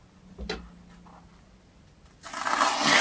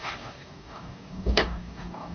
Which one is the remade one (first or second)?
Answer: second